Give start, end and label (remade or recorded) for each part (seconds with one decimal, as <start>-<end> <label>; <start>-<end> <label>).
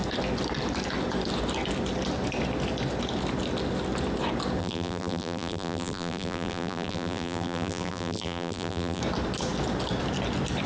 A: 0.0-4.6 recorded; 4.6-9.0 remade; 9.0-10.7 recorded